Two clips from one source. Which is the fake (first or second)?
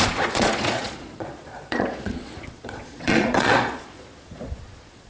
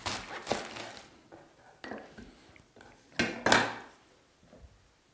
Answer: first